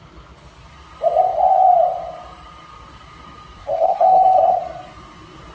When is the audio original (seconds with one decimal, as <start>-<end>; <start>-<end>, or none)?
0.0-3.6; 4.6-5.5